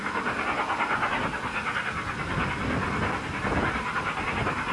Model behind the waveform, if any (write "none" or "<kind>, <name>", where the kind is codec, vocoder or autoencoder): none